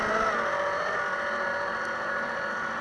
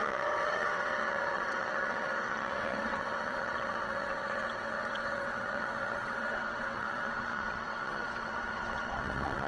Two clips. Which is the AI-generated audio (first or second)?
second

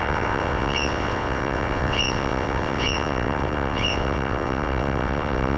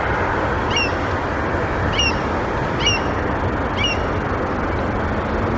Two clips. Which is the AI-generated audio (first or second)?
first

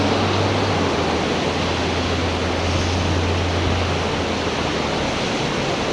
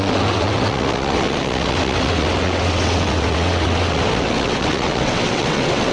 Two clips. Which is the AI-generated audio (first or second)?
second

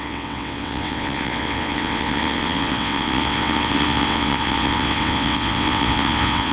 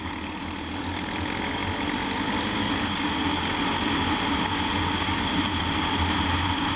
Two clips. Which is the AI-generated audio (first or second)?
first